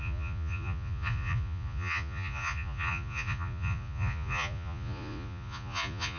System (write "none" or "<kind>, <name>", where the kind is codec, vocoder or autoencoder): vocoder, Vocos